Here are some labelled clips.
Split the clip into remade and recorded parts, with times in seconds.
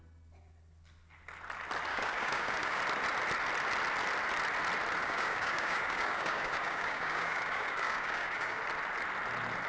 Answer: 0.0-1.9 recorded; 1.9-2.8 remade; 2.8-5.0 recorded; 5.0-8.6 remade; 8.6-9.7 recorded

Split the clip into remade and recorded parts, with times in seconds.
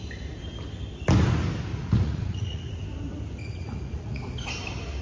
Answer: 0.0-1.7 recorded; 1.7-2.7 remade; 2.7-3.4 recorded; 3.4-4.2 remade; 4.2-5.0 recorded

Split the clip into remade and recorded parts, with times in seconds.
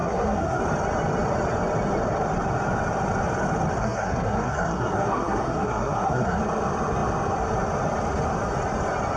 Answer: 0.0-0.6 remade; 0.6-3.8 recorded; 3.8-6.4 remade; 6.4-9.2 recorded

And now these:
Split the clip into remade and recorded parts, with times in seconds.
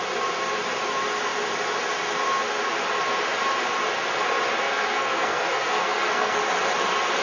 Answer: 0.0-4.6 recorded; 4.6-6.4 remade; 6.4-7.2 recorded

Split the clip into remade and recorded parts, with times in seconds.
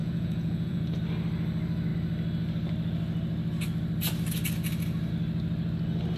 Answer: 0.0-1.0 remade; 1.0-6.2 recorded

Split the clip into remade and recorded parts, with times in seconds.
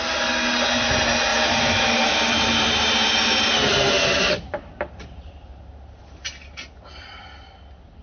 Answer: 0.0-1.3 recorded; 1.3-6.0 remade; 6.0-8.0 recorded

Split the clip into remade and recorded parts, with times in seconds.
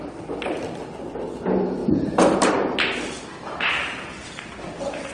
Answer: 0.0-1.8 recorded; 1.8-2.5 remade; 2.5-5.1 recorded